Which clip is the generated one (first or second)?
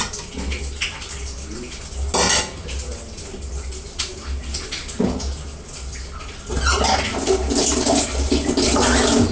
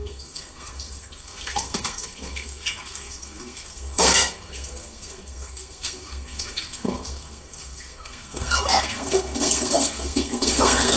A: second